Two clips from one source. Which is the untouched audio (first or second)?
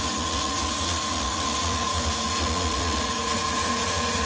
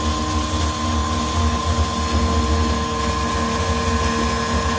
second